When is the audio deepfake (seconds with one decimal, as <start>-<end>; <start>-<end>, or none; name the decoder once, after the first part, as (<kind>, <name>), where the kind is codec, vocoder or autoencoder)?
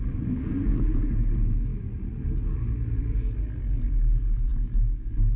none